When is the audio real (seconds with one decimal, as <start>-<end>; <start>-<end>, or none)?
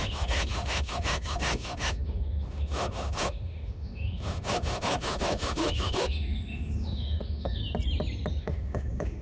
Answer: 7.6-8.4